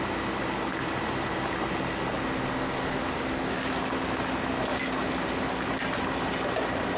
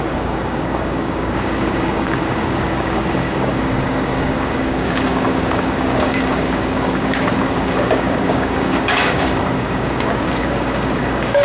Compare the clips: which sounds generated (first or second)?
second